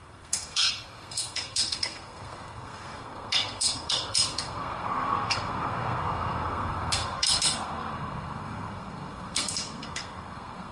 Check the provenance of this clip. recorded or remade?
remade